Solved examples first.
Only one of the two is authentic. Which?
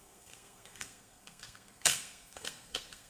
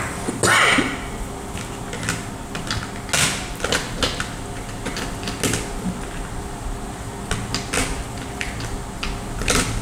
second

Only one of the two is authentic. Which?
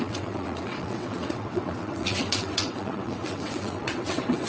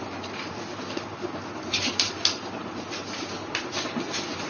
second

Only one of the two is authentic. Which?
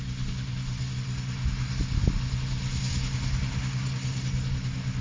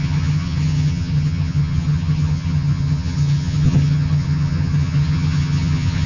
first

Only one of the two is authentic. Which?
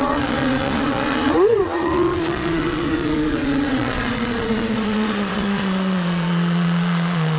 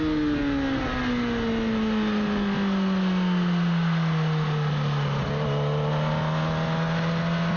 second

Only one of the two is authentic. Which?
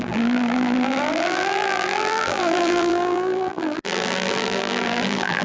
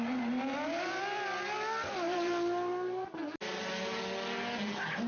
second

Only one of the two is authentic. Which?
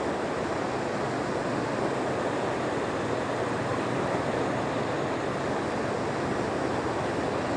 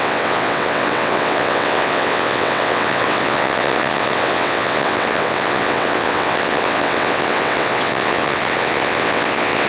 first